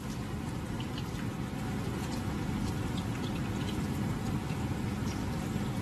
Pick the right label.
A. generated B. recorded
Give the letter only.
B